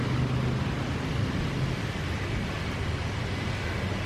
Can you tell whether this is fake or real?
real